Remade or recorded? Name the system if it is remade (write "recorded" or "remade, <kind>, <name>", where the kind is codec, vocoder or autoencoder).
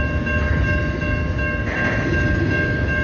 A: recorded